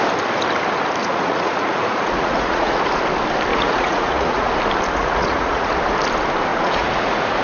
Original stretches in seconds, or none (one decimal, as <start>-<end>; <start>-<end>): 0.0-1.0; 2.9-3.5; 4.5-5.0; 5.7-6.5